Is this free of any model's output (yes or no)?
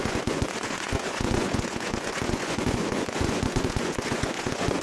no